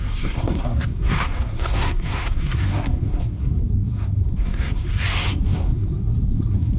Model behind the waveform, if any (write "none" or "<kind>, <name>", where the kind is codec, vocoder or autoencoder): codec, SNAC